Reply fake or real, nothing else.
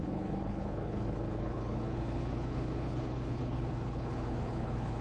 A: fake